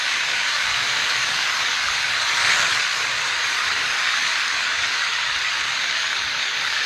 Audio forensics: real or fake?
fake